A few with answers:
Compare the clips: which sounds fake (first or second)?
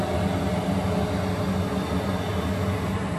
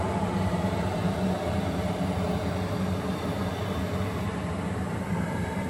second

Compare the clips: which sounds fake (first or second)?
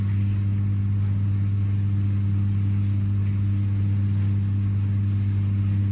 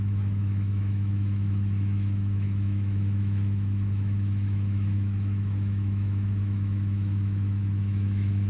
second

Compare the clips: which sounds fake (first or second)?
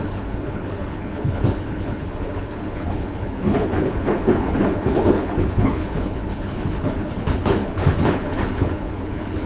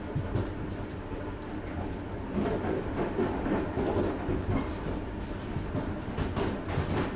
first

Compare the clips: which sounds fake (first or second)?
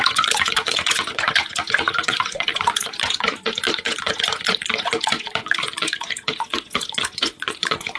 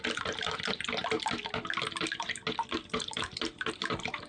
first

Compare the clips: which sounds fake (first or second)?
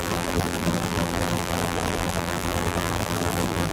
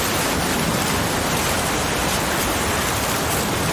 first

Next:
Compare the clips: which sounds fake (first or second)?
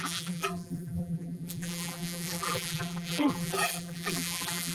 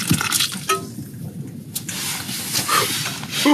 first